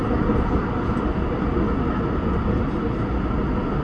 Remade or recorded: recorded